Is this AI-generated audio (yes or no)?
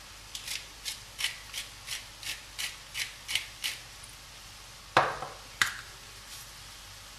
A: no